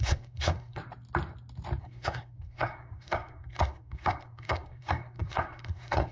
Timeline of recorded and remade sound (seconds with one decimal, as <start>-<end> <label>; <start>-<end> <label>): 0.0-0.8 remade; 0.8-1.8 recorded; 1.8-6.1 remade